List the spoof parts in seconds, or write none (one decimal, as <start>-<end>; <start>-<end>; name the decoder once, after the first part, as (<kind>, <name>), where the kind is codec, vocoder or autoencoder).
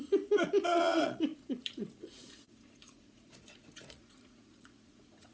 0.0-5.3 (vocoder, Vocos)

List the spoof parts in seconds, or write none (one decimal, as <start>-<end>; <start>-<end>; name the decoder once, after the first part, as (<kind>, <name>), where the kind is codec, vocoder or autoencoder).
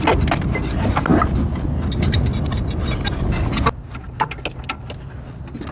none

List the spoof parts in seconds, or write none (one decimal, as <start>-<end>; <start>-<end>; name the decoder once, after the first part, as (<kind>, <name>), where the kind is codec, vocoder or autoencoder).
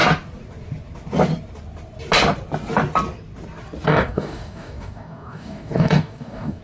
3.9-6.6 (codec, DAC)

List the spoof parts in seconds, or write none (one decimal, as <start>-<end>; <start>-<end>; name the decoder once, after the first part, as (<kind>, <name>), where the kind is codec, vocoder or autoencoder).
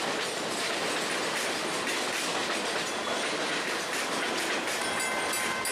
none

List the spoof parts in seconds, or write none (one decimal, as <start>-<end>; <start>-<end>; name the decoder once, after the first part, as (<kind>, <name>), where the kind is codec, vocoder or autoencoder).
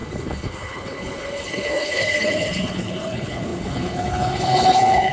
0.0-5.1 (codec, HILCodec)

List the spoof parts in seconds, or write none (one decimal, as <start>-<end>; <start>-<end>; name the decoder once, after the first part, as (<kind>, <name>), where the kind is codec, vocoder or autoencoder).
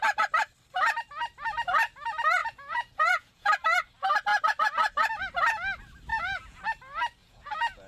2.4-3.5 (vocoder, Vocos); 6.1-6.6; 7.2-7.9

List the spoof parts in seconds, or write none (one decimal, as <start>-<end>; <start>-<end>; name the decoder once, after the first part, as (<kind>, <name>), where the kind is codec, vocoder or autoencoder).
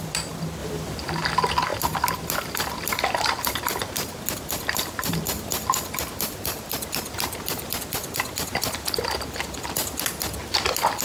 none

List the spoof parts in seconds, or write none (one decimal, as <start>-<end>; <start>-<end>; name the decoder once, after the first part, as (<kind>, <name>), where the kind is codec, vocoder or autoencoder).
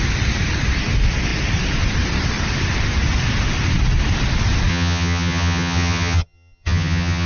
4.7-7.3 (vocoder, HiFi-GAN)